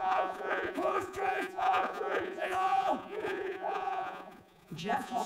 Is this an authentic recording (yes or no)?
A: no